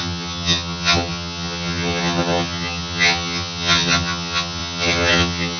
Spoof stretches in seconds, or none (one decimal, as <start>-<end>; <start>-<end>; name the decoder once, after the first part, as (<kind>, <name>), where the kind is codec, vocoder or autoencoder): 0.0-5.6 (vocoder, HiFi-GAN)